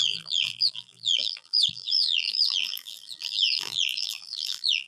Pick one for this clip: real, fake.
fake